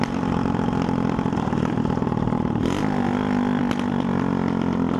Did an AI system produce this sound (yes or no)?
no